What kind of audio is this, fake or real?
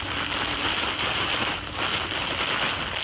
real